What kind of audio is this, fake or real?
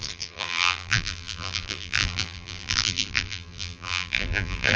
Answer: fake